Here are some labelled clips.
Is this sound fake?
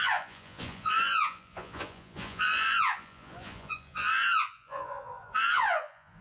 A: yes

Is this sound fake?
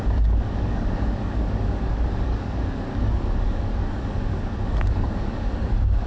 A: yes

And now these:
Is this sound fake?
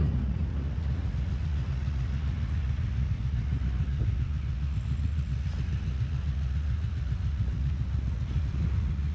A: yes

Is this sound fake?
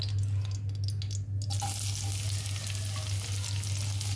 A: no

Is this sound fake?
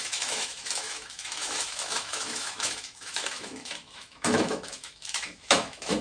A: yes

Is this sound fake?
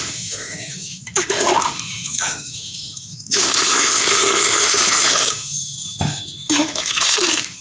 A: yes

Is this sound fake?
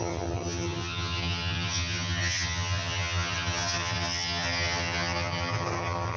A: yes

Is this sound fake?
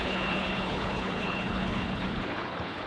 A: yes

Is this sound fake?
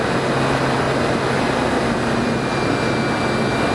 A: no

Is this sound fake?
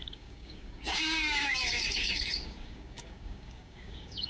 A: yes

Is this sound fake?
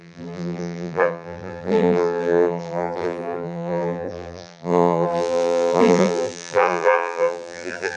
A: yes